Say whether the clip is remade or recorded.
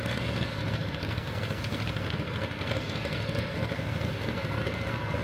remade